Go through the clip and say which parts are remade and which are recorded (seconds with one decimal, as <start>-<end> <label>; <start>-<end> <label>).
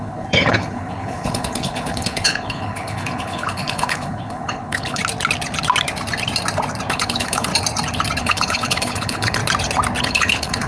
0.0-5.0 remade; 5.0-6.9 recorded; 6.9-7.5 remade; 7.5-8.2 recorded; 8.2-9.4 remade; 9.4-10.0 recorded; 10.0-10.7 remade